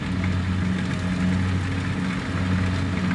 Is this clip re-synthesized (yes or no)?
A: no